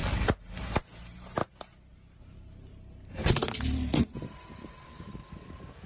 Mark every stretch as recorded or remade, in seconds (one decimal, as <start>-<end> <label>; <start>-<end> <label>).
0.0-0.6 recorded; 0.6-2.7 remade; 2.7-3.7 recorded; 3.7-5.9 remade